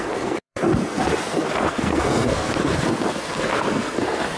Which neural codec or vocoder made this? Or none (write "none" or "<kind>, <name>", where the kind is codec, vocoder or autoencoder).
codec, SNAC